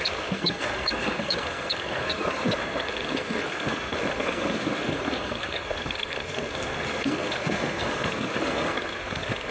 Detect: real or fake fake